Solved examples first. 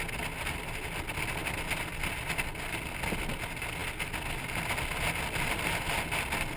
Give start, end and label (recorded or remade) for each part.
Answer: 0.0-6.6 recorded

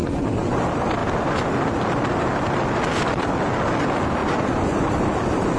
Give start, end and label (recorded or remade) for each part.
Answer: 0.0-0.6 remade; 0.6-4.2 recorded; 4.2-4.9 remade; 4.9-5.6 recorded

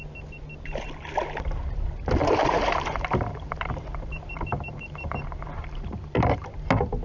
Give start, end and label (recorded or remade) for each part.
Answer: 0.0-2.2 recorded; 2.2-6.4 remade; 6.4-7.0 recorded

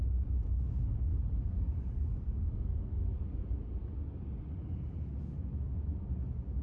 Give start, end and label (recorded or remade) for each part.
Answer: 0.0-1.1 recorded; 1.1-3.4 remade; 3.4-6.6 recorded

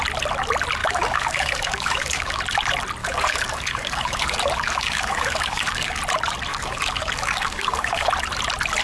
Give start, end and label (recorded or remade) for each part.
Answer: 0.0-0.8 recorded; 0.8-2.4 remade; 2.4-3.0 recorded; 3.0-6.0 remade; 6.0-6.5 recorded; 6.5-8.1 remade; 8.1-8.8 recorded

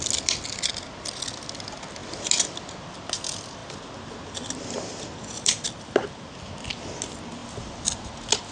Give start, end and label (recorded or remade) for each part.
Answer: 0.0-8.5 recorded

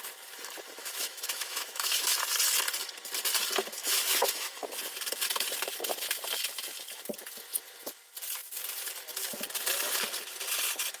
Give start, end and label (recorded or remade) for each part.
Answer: 0.0-0.8 recorded; 0.8-2.2 remade; 2.2-3.8 recorded; 3.8-4.7 remade; 4.7-11.0 recorded